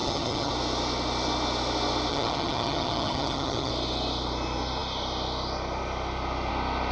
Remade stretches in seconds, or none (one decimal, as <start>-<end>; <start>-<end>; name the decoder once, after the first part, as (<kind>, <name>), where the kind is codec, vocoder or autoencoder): 0.0-0.5 (vocoder, HiFi-GAN); 2.1-3.7